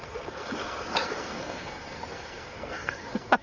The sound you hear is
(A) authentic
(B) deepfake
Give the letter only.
B